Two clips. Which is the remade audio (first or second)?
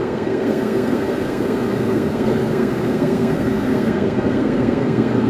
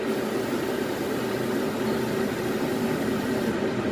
first